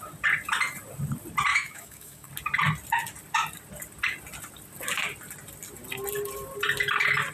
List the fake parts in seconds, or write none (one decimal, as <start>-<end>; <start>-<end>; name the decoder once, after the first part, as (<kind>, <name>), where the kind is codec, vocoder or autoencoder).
1.5-2.3 (autoencoder, DAC-VAE)